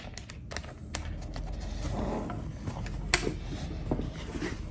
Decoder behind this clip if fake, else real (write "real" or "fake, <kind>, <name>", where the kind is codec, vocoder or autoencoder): real